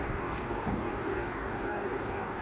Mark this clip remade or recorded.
remade